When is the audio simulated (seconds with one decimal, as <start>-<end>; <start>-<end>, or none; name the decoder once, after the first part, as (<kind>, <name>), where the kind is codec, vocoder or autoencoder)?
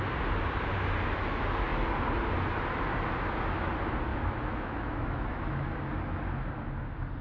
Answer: 4.1-5.7 (autoencoder, DAC-VAE)